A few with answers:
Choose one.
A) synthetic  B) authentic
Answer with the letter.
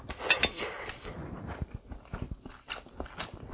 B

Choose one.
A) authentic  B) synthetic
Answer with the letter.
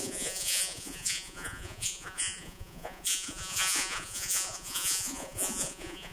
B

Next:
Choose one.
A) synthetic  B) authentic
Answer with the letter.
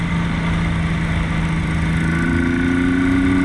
B